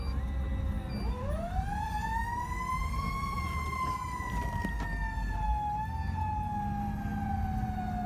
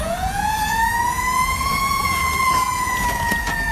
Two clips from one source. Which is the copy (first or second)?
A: second